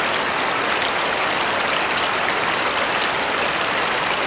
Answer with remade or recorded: recorded